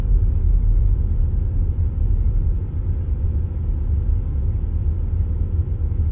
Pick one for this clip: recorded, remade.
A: recorded